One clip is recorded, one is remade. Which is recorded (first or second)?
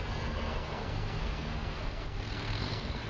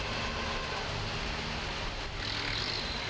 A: second